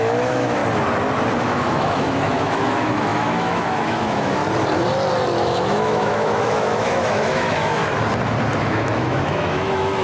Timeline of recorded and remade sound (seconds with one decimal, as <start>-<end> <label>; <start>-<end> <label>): 0.0-0.6 remade; 0.6-1.4 recorded; 1.4-4.4 remade; 4.4-5.4 recorded; 5.4-7.8 remade; 7.8-8.6 recorded; 8.6-10.0 remade